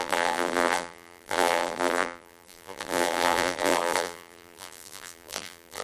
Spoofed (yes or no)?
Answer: yes